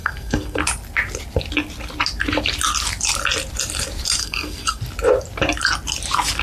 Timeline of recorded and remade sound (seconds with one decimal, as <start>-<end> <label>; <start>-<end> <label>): 0.0-0.6 remade; 0.6-4.2 recorded; 4.2-4.8 remade; 4.8-6.4 recorded